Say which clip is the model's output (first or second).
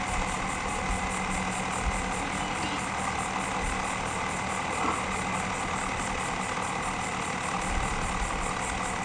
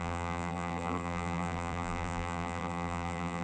second